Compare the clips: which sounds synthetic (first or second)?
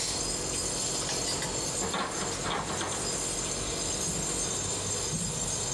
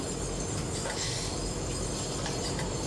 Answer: second